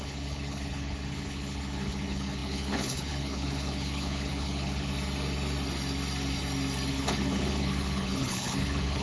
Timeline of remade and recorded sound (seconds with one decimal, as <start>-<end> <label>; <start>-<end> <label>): 0.0-4.9 remade; 4.9-6.9 recorded; 6.9-9.0 remade